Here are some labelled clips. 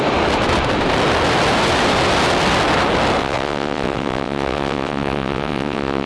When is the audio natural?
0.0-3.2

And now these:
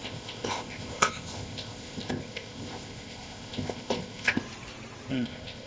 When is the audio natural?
4.4-5.1

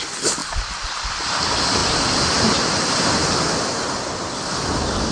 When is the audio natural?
0.0-5.1

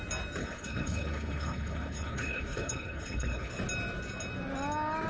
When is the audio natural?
0.0-0.4; 3.5-5.1

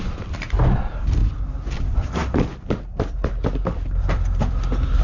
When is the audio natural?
1.2-1.8

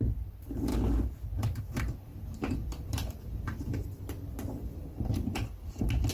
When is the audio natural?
0.7-1.6

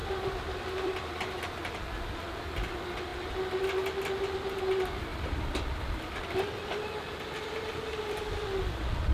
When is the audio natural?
1.6-5.1; 6.0-9.1

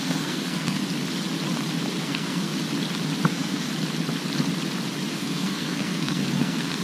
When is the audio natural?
0.8-2.0; 2.5-3.3; 3.7-5.1